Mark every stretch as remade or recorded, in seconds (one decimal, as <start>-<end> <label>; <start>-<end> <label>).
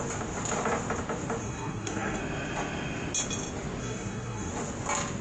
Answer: 0.0-1.4 recorded; 1.4-2.2 remade; 2.2-3.8 recorded; 3.8-4.5 remade; 4.5-5.2 recorded